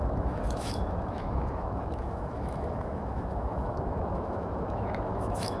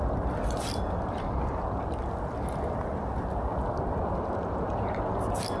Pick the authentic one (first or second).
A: second